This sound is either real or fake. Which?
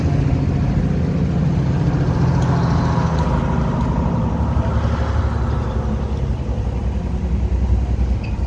real